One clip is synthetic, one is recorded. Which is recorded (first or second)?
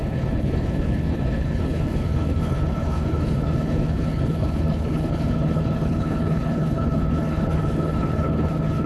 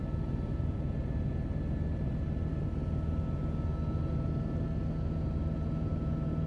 second